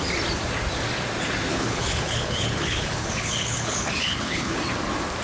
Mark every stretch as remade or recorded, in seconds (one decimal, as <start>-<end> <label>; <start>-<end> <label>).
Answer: 0.0-1.5 recorded; 1.5-4.6 remade; 4.6-5.2 recorded